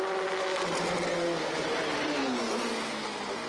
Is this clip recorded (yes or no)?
yes